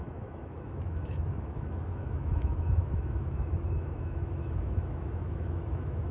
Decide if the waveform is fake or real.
fake